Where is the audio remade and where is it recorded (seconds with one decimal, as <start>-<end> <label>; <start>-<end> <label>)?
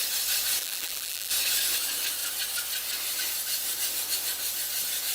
0.0-0.6 recorded; 0.6-1.3 remade; 1.3-5.1 recorded